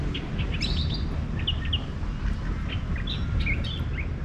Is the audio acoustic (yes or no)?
yes